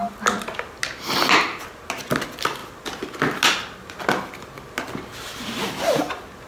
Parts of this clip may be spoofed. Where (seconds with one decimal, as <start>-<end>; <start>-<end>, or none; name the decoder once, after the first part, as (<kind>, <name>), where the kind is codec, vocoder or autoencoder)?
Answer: none